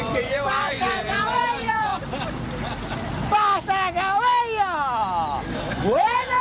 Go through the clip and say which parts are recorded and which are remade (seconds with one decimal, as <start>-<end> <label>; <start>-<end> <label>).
0.0-1.9 remade; 1.9-5.7 recorded; 5.7-6.4 remade